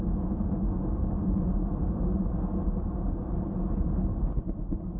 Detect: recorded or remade recorded